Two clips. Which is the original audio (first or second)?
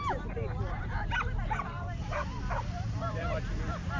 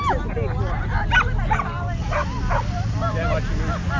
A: second